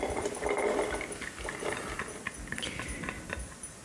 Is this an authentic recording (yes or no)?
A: yes